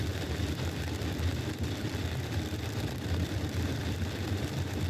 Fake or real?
fake